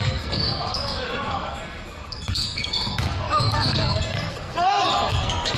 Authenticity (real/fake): fake